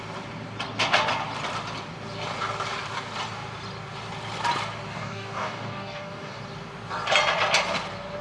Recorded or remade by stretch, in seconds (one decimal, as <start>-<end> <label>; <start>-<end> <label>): 0.0-4.9 recorded; 4.9-6.4 remade; 6.4-8.2 recorded